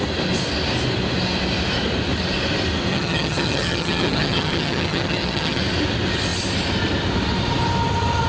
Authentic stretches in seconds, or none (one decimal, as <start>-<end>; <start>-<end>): 0.0-2.9; 5.6-8.3